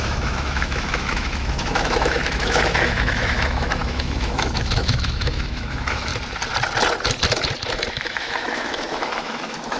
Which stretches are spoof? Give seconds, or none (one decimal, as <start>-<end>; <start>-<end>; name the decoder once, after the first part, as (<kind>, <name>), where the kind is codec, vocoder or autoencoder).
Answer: 0.0-6.1 (autoencoder, DAC-VAE); 7.9-9.8